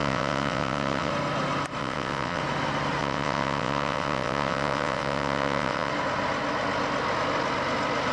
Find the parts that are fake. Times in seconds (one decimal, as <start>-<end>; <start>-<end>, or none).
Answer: 0.0-1.1; 1.8-2.4; 3.0-5.9